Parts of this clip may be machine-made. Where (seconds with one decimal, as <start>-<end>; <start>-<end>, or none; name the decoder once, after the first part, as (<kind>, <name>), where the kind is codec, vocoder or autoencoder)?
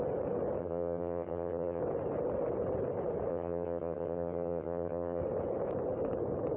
0.6-1.8 (vocoder, HiFi-GAN); 3.3-5.2